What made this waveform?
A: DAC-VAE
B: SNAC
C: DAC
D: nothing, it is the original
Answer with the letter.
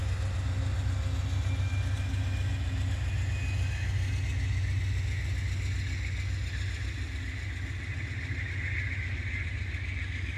D